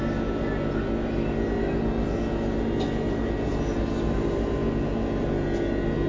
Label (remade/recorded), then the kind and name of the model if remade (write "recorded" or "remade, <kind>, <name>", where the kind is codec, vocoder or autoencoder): recorded